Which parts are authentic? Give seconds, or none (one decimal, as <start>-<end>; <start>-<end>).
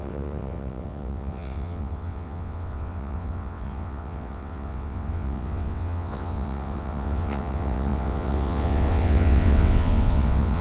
none